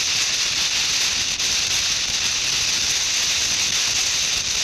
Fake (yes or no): no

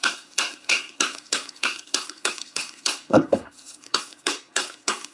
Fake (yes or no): yes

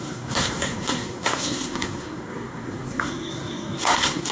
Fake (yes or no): yes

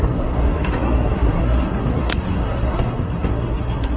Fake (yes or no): yes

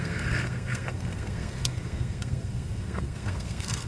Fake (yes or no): yes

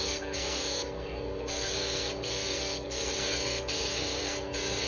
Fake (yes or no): yes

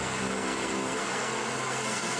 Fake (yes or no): yes